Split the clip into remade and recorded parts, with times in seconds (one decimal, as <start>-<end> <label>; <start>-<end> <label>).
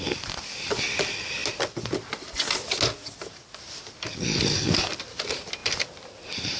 0.0-6.6 recorded